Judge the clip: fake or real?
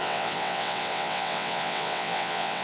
fake